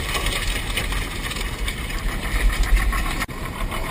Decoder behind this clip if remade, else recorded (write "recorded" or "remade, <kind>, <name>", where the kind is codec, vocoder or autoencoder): recorded